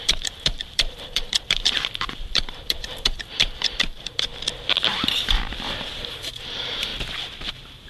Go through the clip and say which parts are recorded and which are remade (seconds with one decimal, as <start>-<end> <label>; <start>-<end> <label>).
0.0-4.3 remade; 4.3-4.9 recorded; 4.9-6.9 remade; 6.9-7.5 recorded; 7.5-7.9 remade